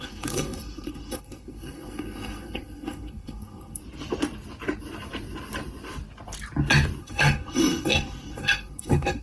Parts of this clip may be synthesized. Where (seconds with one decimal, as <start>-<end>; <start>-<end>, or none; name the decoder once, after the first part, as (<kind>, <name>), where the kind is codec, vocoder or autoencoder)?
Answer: 0.0-3.8 (codec, SNAC); 7.0-9.2